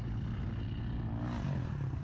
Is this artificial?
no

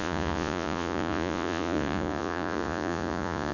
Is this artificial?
yes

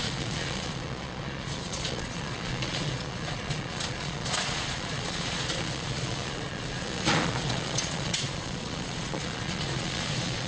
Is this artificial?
yes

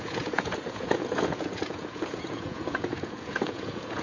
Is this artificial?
yes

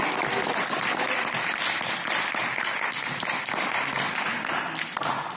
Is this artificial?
no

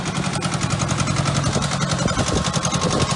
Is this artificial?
no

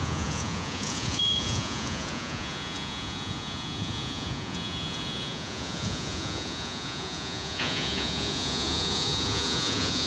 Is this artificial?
yes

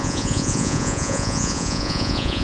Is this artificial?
yes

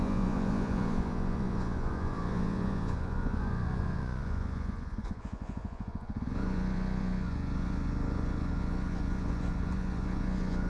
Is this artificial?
yes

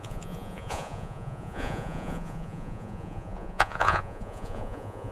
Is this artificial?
yes